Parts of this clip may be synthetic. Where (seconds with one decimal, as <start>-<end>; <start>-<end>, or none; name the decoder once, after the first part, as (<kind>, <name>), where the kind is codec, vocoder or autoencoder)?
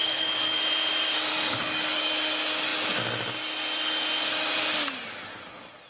0.0-0.6 (codec, DAC); 1.3-2.1